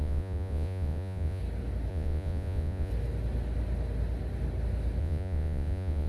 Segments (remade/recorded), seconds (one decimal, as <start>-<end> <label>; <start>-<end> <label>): 0.0-1.4 remade; 1.4-1.9 recorded; 1.9-2.9 remade; 2.9-5.0 recorded; 5.0-6.1 remade